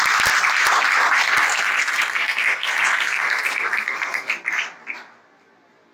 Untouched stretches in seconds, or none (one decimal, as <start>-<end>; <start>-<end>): 0.0-1.4; 4.3-5.9